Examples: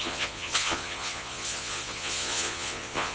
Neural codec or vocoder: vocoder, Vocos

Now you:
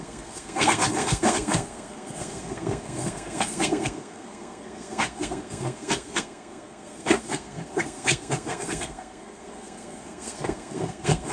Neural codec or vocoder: codec, SNAC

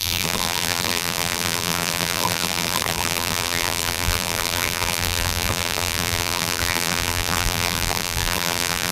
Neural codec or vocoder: vocoder, BigVGAN v2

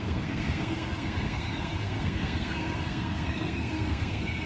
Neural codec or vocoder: codec, SNAC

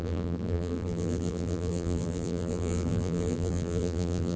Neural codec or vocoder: vocoder, BigVGAN v2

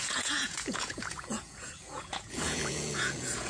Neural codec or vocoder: vocoder, Vocos